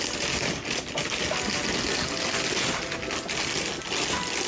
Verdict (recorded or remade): recorded